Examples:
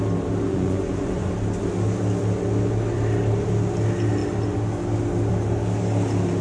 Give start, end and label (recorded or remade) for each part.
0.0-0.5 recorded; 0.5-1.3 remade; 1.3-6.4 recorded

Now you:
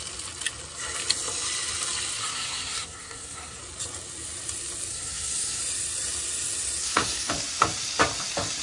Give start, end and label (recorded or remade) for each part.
0.0-2.2 recorded; 2.2-3.6 remade; 3.6-4.9 recorded; 4.9-5.6 remade; 5.6-6.8 recorded; 6.8-7.3 remade; 7.3-8.6 recorded

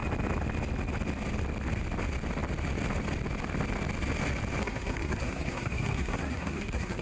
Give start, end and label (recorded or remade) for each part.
0.0-4.6 recorded; 4.6-7.0 remade

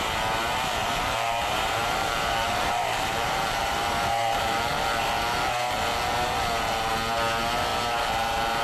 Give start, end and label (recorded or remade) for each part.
0.0-0.8 recorded; 0.8-5.0 remade; 5.0-8.6 recorded

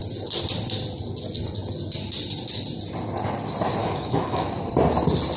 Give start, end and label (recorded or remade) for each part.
0.0-3.8 recorded; 3.8-4.5 remade; 4.5-5.4 recorded

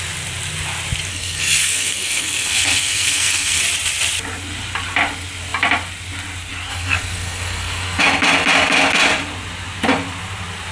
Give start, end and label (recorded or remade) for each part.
0.0-1.1 recorded; 1.1-3.6 remade; 3.6-6.7 recorded; 6.7-8.0 remade; 8.0-10.7 recorded

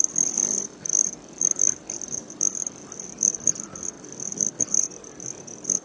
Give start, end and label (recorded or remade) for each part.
0.0-5.8 recorded